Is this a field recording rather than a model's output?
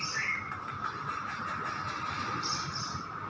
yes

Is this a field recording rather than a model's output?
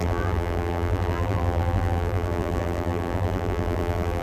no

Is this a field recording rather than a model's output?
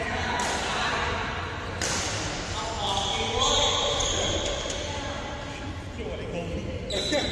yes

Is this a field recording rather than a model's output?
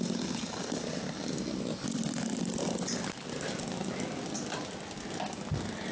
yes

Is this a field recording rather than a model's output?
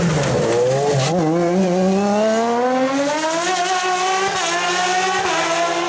yes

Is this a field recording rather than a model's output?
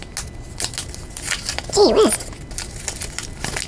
yes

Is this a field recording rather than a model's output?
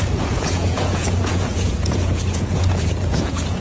no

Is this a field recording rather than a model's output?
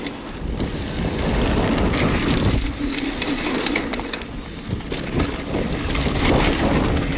yes